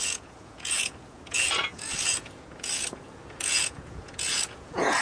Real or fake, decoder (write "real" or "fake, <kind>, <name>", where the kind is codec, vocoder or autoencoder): fake, vocoder, Vocos